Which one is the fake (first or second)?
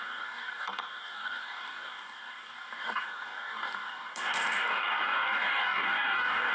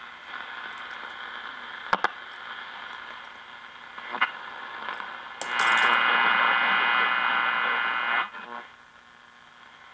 first